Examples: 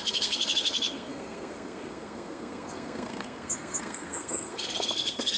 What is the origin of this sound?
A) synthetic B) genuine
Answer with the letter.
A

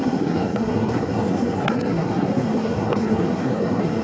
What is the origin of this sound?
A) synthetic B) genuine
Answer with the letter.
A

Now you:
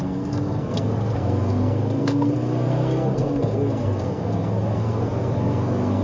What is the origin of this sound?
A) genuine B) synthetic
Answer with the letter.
B